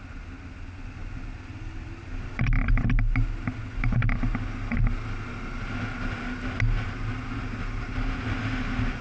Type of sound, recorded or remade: recorded